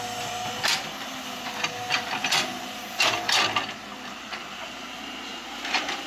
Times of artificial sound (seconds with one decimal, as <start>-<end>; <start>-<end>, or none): 2.2-3.0; 3.9-6.1